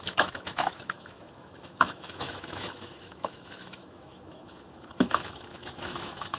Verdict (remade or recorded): remade